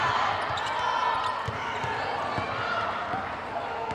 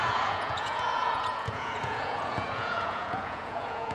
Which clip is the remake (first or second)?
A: second